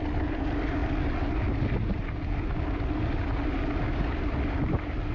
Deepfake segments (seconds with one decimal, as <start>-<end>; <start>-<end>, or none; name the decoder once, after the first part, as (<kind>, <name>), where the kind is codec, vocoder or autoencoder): none